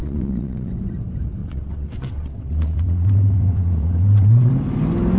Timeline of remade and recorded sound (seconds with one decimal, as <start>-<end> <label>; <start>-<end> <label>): 0.0-0.7 remade; 0.7-1.4 recorded; 1.4-4.5 remade; 4.5-5.2 recorded